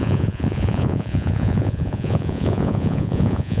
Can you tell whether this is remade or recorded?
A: remade